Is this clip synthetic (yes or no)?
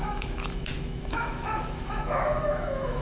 yes